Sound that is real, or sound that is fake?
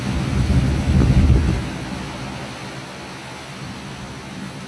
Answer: real